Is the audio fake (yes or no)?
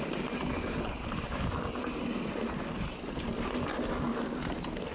no